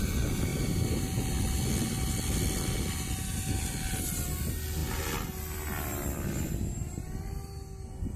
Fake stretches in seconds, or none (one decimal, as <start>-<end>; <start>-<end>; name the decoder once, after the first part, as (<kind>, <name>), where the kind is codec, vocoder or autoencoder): none